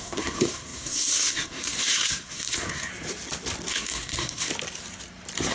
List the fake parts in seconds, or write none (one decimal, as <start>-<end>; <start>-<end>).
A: 0.0-2.9; 3.7-4.5